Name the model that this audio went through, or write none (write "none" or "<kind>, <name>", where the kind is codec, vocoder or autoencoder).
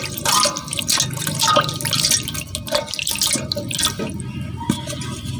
none